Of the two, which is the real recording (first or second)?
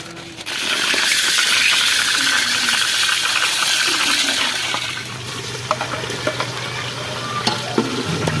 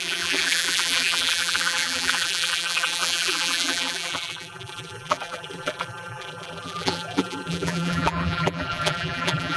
first